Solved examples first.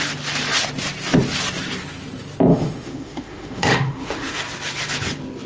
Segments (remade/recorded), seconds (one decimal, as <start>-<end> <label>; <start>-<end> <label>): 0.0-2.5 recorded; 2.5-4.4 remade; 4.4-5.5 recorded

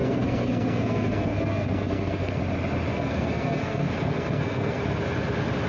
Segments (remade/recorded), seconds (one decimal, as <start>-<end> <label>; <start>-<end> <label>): 0.0-2.4 remade; 2.4-2.9 recorded; 2.9-4.8 remade; 4.8-5.7 recorded

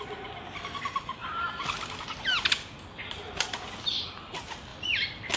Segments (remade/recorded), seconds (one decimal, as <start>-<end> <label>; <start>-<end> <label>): 0.0-1.2 recorded; 1.2-3.6 remade; 3.6-5.4 recorded

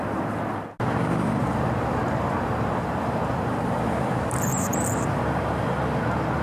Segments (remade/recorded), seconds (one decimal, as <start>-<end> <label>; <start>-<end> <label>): 0.0-1.4 recorded; 1.4-5.2 remade; 5.2-6.4 recorded